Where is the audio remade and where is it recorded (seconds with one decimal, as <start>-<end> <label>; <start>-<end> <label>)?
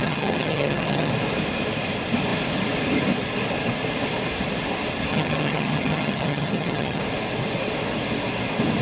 0.0-1.1 remade; 1.1-5.1 recorded; 5.1-7.0 remade; 7.0-8.8 recorded